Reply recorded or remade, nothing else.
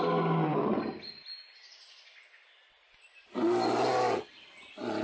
recorded